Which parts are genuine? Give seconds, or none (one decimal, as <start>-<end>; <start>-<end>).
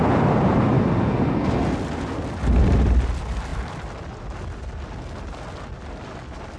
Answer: 0.0-6.6